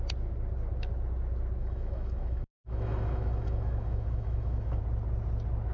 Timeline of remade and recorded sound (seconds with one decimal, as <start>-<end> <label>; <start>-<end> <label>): 0.0-1.6 recorded; 1.6-4.8 remade; 4.8-5.7 recorded